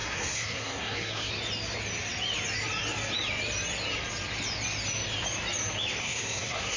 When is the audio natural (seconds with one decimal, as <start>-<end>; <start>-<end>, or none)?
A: 1.3-6.0